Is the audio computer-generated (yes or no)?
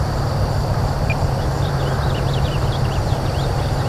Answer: yes